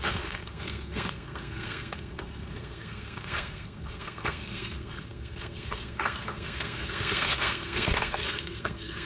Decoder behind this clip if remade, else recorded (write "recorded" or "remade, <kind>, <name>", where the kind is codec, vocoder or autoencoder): remade, codec, SNAC